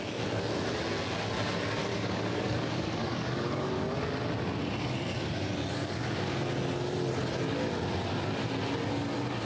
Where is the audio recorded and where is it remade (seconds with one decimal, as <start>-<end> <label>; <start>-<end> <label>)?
0.0-1.9 recorded; 1.9-3.7 remade; 3.7-5.8 recorded; 5.8-6.4 remade; 6.4-9.5 recorded